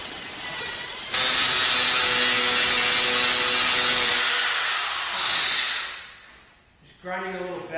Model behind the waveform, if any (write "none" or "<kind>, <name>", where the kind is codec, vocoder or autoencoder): none